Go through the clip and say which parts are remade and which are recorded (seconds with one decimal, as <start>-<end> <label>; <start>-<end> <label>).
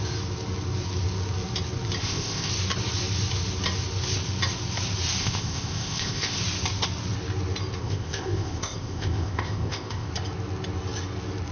0.0-2.0 recorded; 2.0-2.5 remade; 2.5-5.2 recorded; 5.2-6.4 remade; 6.4-7.8 recorded; 7.8-10.1 remade; 10.1-11.5 recorded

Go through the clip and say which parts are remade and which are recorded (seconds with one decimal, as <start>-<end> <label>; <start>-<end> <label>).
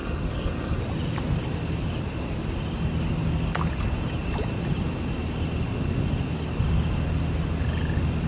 0.0-0.8 remade; 0.8-8.3 recorded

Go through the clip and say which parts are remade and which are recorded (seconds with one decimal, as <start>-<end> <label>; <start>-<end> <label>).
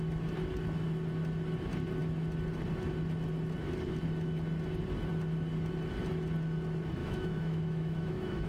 0.0-7.0 recorded; 7.0-8.5 remade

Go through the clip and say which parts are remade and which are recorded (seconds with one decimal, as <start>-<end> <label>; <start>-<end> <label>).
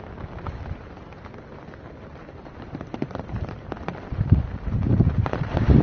0.0-2.2 recorded; 2.2-5.8 remade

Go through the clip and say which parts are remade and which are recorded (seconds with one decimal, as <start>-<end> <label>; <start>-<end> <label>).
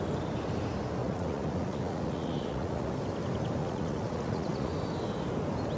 0.0-1.0 recorded; 1.0-2.9 remade; 2.9-3.6 recorded; 3.6-4.7 remade; 4.7-5.8 recorded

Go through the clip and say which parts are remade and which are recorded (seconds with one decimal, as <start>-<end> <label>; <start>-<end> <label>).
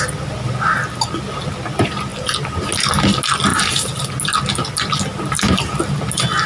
0.0-3.5 recorded; 3.5-4.1 remade; 4.1-5.1 recorded; 5.1-5.8 remade; 5.8-6.5 recorded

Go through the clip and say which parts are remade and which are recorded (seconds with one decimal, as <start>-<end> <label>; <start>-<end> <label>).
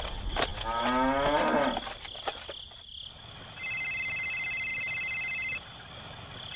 0.0-6.6 recorded